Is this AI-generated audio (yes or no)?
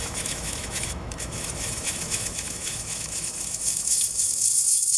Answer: yes